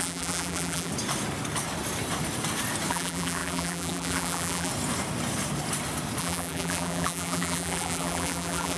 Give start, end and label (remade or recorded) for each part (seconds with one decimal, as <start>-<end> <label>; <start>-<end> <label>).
0.0-0.9 remade; 0.9-2.9 recorded; 2.9-4.7 remade; 4.7-6.2 recorded; 6.2-8.8 remade